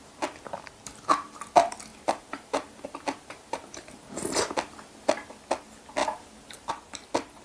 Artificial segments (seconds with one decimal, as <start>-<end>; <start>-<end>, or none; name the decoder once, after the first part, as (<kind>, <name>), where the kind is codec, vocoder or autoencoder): 1.9-4.1 (vocoder, BigVGAN v2); 6.0-6.7

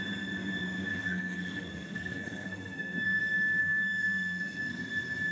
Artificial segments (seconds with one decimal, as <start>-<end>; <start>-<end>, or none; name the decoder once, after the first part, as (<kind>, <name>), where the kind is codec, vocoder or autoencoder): 0.9-3.2 (codec, SNAC); 3.6-4.8

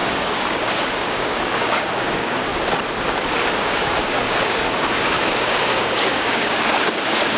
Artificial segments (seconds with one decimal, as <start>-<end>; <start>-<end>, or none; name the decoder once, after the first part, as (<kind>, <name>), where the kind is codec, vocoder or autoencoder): 0.0-2.5 (codec, DAC); 3.6-7.4

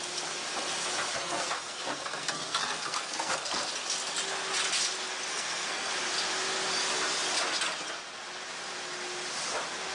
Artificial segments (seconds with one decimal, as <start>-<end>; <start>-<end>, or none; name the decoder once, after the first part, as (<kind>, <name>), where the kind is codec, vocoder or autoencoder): 1.1-3.7 (codec, SNAC); 5.3-5.9

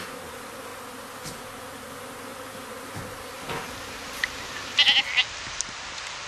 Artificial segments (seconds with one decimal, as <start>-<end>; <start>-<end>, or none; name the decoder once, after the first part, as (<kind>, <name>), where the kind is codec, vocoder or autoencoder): none